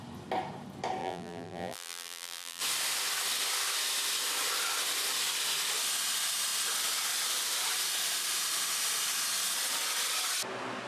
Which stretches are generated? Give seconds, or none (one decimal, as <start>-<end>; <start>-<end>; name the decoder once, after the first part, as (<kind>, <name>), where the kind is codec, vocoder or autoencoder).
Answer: 1.0-2.6 (vocoder, BigVGAN v2)

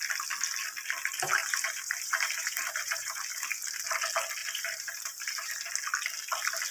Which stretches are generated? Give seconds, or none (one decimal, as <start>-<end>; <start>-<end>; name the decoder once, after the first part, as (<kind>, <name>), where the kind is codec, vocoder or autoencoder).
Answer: 1.4-3.9 (vocoder, BigVGAN v2); 4.4-5.7

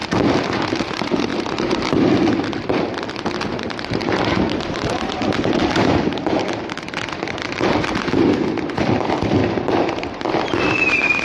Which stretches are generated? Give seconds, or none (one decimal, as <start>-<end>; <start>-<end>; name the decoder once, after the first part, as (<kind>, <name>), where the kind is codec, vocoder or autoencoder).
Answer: 0.8-9.4 (vocoder, BigVGAN v2); 9.9-11.2

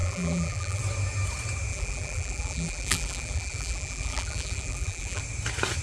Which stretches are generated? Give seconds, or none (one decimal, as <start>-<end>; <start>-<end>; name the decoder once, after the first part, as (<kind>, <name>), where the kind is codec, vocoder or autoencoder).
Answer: 0.0-0.8 (vocoder, BigVGAN v2); 1.7-5.2

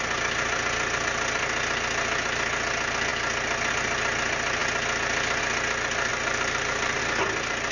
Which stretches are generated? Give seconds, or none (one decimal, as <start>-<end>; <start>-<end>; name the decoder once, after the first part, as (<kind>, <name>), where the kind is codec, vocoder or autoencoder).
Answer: 6.1-7.0 (vocoder, BigVGAN v2)

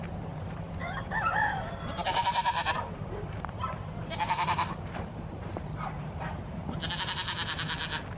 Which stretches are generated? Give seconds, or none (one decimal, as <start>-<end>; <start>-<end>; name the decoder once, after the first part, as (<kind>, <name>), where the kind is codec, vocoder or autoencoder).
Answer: 0.0-6.8 (vocoder, BigVGAN v2)